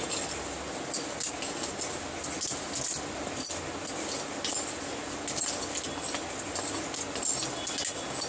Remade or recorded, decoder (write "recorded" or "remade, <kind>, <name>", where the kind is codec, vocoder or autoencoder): recorded